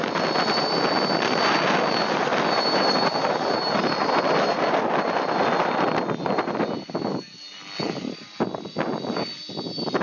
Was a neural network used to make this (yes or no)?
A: no